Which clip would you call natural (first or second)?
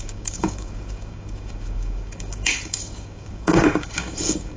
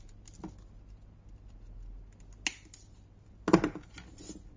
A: second